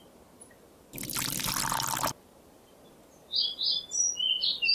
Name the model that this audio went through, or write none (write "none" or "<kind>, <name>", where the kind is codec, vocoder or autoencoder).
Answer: none